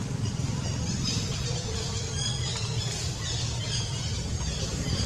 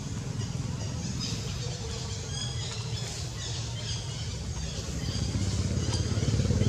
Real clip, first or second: second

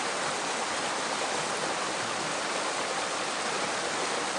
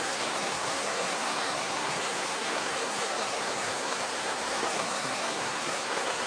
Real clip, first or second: first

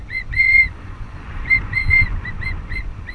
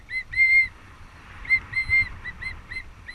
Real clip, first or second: second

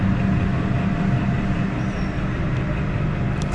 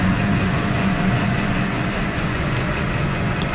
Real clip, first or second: first